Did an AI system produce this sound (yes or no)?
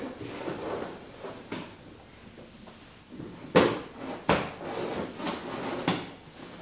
no